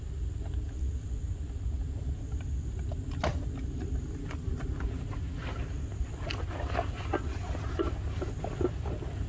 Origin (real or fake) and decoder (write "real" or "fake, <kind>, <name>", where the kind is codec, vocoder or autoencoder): real